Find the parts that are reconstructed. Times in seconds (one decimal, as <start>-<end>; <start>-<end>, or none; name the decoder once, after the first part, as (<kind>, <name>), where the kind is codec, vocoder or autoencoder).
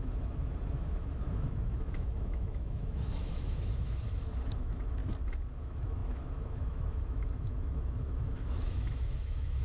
0.0-5.0 (autoencoder, DAC-VAE); 5.6-9.6